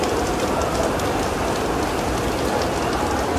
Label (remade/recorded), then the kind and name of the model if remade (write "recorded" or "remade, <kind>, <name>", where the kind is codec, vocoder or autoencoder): recorded